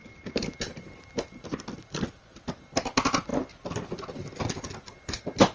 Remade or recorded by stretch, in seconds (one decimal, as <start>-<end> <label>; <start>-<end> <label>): 0.0-5.5 recorded